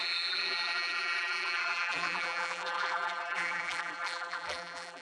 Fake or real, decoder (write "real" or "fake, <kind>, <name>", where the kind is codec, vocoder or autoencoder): fake, vocoder, BigVGAN v2